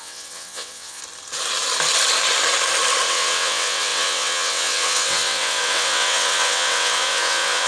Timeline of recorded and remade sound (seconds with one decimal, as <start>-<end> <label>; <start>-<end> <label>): 0.0-1.0 remade; 1.0-3.1 recorded; 3.1-7.7 remade